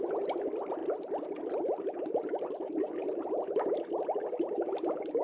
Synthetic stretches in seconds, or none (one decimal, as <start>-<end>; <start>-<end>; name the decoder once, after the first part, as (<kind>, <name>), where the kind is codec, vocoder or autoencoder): none